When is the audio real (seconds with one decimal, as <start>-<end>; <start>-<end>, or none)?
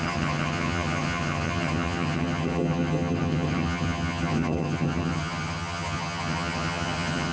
none